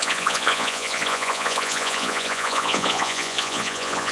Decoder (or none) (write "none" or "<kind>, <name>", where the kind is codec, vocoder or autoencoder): vocoder, Vocos